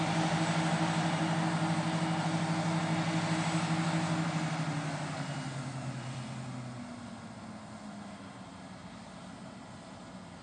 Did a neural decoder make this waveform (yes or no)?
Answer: no